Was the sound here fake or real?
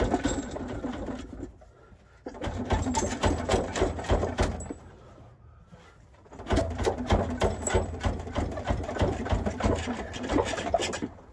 fake